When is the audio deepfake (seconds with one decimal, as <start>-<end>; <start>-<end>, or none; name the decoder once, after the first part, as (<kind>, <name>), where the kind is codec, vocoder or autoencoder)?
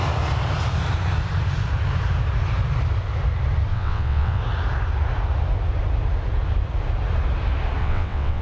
3.7-4.4 (vocoder, WaveNeXt); 7.8-8.4